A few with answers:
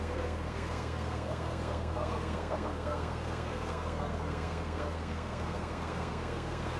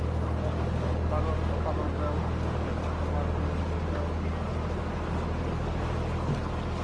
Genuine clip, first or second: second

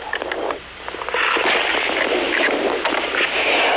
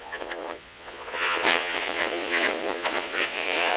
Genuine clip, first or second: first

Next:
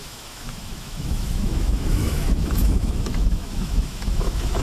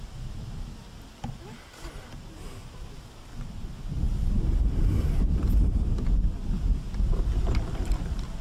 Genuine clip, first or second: second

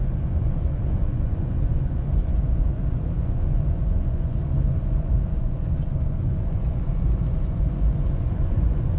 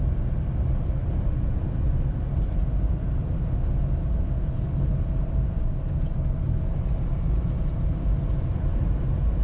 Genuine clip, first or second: second